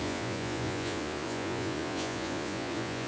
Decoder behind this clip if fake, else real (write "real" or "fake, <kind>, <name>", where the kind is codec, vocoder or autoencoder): fake, vocoder, Vocos